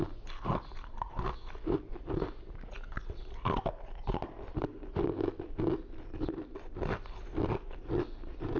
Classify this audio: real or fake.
real